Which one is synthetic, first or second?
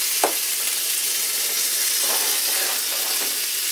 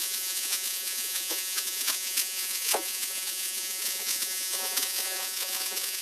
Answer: second